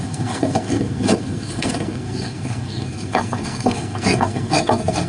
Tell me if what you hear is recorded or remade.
remade